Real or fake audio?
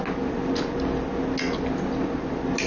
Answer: real